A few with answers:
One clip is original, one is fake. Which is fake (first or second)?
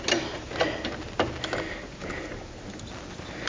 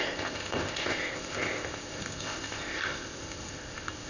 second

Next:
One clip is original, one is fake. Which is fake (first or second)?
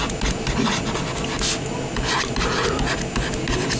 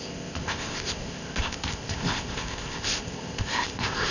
second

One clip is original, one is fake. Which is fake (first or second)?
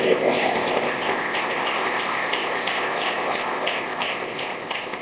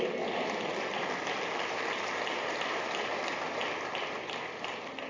first